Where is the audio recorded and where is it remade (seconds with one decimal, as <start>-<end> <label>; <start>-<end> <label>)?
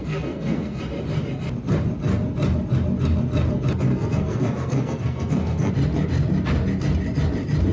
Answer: 0.0-0.8 remade; 0.8-3.9 recorded; 3.9-5.7 remade; 5.7-7.7 recorded